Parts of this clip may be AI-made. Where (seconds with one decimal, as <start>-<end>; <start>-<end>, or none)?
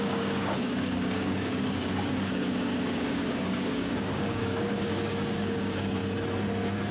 0.0-6.0